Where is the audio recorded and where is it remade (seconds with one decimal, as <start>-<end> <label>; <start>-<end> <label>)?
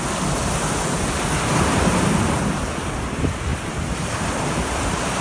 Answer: 0.0-5.2 recorded